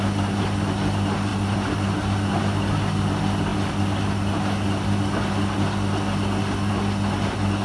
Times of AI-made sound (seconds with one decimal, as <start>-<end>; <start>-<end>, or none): none